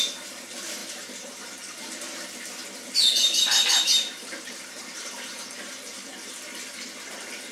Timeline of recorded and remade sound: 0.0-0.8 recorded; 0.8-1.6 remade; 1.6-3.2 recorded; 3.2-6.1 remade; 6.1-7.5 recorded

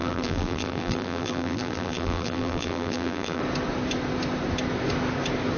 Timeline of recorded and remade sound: 0.0-3.4 remade; 3.4-5.6 recorded

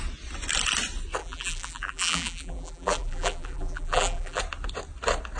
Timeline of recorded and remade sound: 0.0-1.2 recorded; 1.2-4.4 remade; 4.4-5.4 recorded

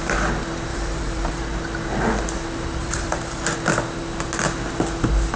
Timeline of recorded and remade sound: 0.0-0.7 recorded; 0.7-1.4 remade; 1.4-2.8 recorded; 2.8-3.4 remade; 3.4-5.4 recorded

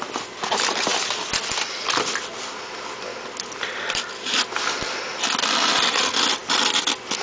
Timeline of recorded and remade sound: 0.0-0.9 recorded; 0.9-5.1 remade; 5.1-6.4 recorded; 6.4-7.2 remade